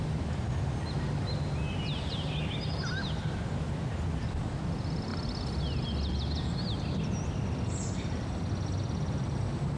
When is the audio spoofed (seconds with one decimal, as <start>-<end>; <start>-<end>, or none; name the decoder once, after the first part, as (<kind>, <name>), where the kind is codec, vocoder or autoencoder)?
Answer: none